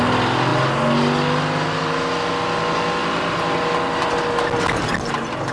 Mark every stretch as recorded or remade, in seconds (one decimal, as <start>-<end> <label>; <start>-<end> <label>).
0.0-5.5 recorded